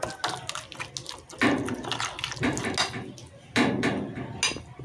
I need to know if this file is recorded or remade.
recorded